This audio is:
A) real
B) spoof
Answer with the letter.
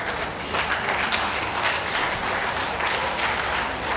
A